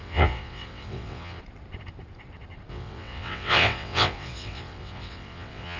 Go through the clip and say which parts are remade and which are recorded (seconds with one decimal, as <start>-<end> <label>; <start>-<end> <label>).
0.0-1.4 remade; 1.4-2.7 recorded; 2.7-5.8 remade